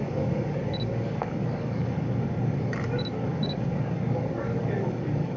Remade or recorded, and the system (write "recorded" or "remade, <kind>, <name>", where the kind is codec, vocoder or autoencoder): remade, codec, DAC